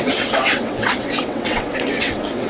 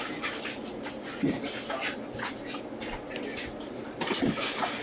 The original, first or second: second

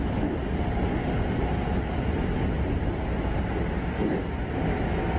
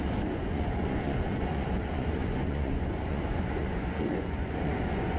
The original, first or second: first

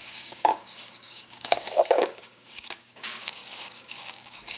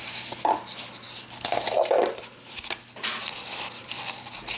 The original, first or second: second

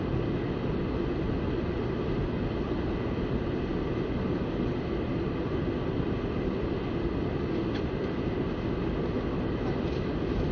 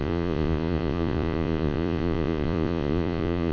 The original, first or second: first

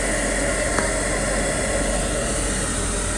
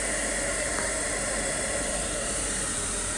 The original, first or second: first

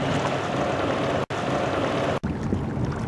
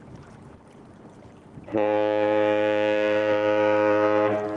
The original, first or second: first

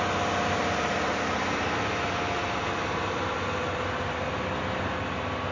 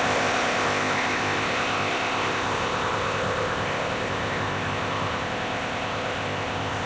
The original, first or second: first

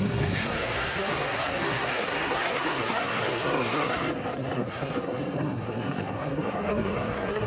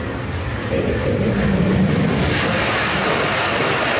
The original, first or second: second